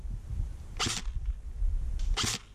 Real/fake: real